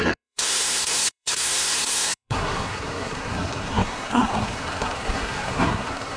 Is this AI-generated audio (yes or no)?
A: yes